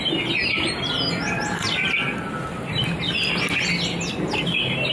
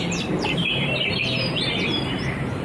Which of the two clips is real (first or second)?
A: first